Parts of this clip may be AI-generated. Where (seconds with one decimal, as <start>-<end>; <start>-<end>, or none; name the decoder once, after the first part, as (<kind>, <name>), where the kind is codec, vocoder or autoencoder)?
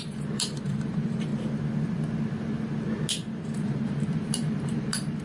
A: 0.0-1.3 (vocoder, BigVGAN v2); 3.6-5.2